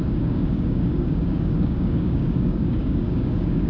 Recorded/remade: remade